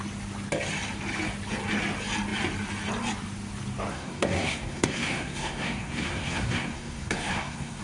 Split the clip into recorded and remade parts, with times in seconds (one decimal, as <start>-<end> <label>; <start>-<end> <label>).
0.0-3.9 recorded; 3.9-7.8 remade